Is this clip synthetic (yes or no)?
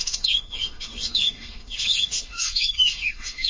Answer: yes